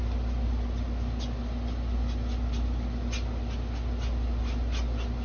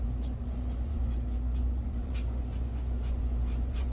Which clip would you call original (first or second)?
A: first